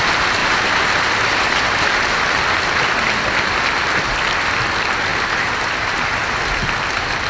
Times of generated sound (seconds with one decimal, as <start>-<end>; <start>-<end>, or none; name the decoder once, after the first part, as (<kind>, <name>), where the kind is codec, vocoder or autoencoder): 0.4-2.2 (vocoder, BigVGAN v2); 5.1-6.4